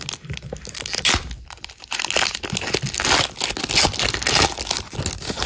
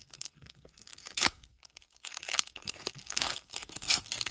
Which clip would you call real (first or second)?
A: first